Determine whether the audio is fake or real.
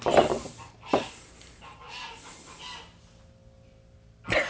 real